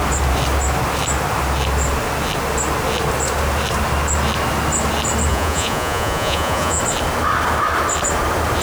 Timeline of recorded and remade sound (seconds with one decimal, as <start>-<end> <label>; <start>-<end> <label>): 0.0-5.3 recorded; 5.3-6.8 remade; 6.8-8.6 recorded